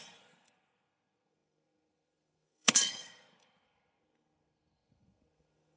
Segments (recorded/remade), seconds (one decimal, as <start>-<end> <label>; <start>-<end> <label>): 0.0-5.8 remade